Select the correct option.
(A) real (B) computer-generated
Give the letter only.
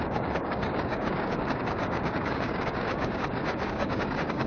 B